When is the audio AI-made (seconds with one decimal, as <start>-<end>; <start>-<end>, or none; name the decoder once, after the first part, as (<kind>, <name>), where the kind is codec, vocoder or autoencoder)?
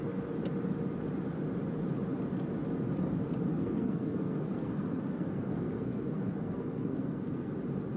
3.5-7.5 (codec, SNAC)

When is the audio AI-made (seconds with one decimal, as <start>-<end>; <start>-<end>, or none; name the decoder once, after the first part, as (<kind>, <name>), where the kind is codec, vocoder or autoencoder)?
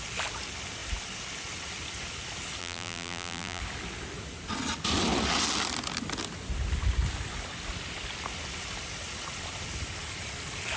2.6-3.6 (vocoder, BigVGAN v2)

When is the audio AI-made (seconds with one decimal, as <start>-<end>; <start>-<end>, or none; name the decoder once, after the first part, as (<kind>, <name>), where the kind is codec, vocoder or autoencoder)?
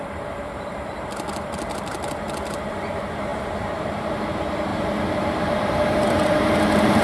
0.0-7.0 (vocoder, BigVGAN v2)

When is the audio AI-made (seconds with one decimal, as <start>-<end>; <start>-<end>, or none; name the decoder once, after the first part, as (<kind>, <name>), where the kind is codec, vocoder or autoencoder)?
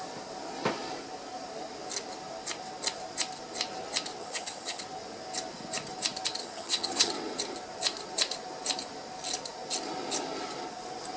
4.2-4.8 (vocoder, HiFi-GAN); 6.4-7.1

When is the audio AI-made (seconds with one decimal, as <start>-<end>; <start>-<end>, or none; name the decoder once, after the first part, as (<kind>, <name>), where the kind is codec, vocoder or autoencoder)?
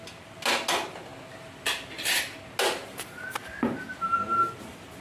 none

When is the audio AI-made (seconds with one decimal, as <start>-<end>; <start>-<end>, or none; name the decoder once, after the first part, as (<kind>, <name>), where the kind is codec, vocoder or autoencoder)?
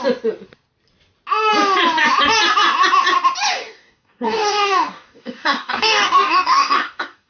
3.5-7.3 (codec, DAC)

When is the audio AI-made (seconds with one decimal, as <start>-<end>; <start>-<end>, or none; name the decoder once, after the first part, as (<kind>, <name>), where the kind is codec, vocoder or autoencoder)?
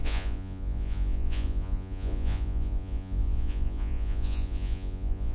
0.0-5.3 (vocoder, Vocos)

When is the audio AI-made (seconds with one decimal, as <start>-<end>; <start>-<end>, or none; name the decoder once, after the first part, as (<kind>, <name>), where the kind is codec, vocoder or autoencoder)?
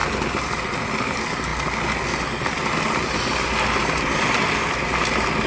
none